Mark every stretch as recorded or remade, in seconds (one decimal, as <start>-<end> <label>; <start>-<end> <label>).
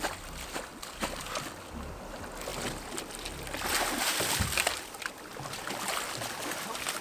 0.0-7.0 recorded